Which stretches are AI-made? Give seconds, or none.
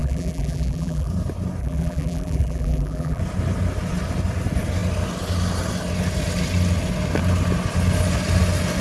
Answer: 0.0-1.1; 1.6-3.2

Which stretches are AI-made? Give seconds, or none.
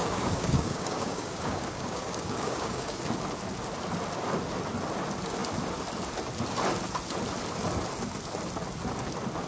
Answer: 0.0-3.0